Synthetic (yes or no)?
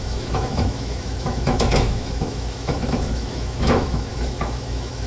yes